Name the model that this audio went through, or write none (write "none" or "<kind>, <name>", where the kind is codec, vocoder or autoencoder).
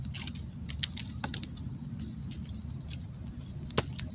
none